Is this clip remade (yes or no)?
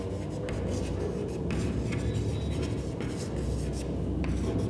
no